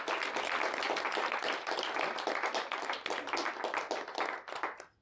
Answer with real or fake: real